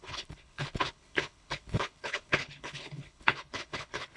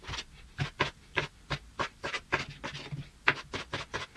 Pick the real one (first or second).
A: second